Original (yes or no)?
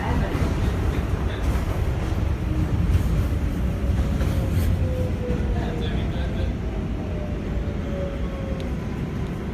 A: yes